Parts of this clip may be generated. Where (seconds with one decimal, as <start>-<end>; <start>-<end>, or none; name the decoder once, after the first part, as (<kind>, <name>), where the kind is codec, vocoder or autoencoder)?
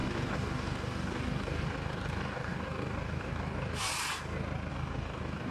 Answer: 0.0-3.9 (codec, DAC); 4.7-5.5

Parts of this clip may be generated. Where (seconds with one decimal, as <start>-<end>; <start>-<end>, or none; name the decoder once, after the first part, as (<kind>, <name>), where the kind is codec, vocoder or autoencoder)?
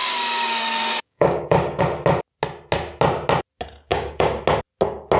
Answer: 0.0-1.8 (codec, DAC); 3.9-4.4